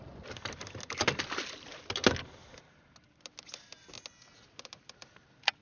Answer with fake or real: real